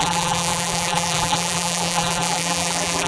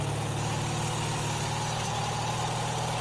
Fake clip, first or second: first